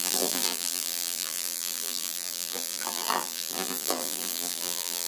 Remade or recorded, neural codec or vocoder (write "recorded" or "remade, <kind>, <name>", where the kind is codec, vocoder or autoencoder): remade, vocoder, BigVGAN v2